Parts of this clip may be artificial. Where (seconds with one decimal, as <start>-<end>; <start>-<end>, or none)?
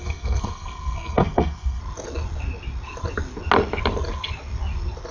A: 0.0-1.8